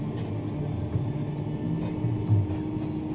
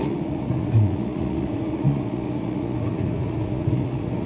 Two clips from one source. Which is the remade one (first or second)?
second